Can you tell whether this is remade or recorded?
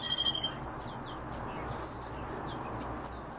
recorded